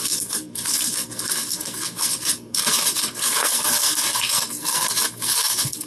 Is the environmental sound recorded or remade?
remade